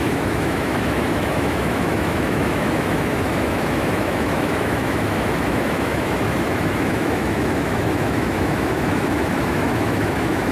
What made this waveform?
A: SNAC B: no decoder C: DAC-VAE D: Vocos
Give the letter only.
C